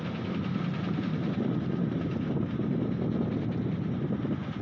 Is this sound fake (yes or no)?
no